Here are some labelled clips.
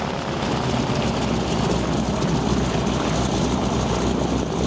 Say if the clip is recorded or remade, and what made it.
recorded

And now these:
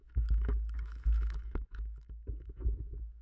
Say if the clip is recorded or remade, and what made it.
remade, autoencoder, DAC-VAE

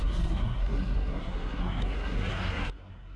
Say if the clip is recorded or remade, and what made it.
remade, codec, SNAC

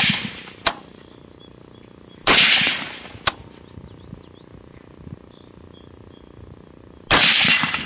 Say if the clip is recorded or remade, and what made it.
recorded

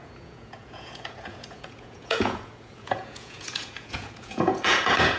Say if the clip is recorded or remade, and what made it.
remade, vocoder, Vocos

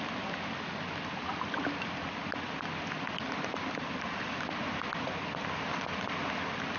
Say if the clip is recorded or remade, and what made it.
recorded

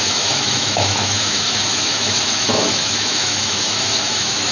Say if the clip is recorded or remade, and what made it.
remade, autoencoder, DAC-VAE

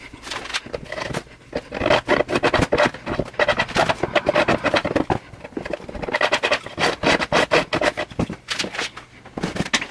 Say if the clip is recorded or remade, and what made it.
recorded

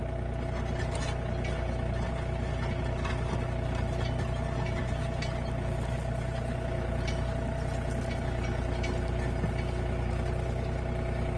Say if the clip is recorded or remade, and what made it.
recorded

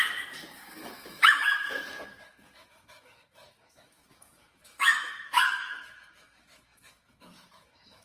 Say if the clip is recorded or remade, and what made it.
remade, autoencoder, DAC-VAE